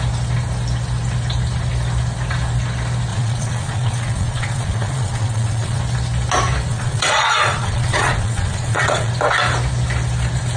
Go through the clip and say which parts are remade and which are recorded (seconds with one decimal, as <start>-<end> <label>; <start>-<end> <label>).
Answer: 0.0-3.1 recorded; 3.1-5.8 remade; 5.8-6.7 recorded; 6.7-9.1 remade; 9.1-10.6 recorded

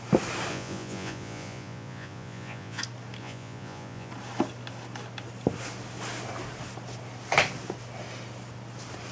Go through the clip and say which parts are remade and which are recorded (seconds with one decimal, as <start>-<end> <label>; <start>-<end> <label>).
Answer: 0.0-0.5 recorded; 0.5-2.8 remade; 2.8-3.2 recorded; 3.2-4.1 remade; 4.1-9.1 recorded

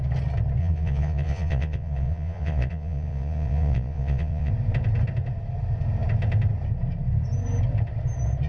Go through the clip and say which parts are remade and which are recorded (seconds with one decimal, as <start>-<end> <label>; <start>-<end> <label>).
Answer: 0.0-0.6 recorded; 0.6-4.5 remade; 4.5-8.5 recorded

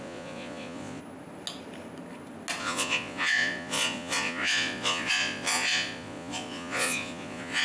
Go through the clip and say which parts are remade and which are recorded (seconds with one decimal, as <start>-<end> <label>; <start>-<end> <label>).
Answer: 0.0-1.0 remade; 1.0-2.6 recorded; 2.6-7.6 remade

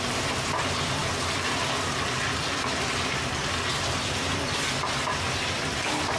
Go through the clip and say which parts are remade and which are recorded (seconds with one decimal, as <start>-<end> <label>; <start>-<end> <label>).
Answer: 0.0-6.2 recorded

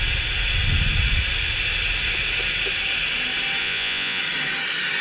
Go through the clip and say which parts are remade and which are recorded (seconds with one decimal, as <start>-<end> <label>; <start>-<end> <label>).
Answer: 0.0-3.6 recorded; 3.6-4.2 remade; 4.2-5.0 recorded

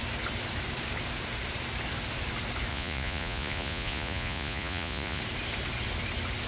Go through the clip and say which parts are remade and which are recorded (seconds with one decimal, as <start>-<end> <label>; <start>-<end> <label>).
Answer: 0.0-2.7 recorded; 2.7-5.2 remade; 5.2-6.5 recorded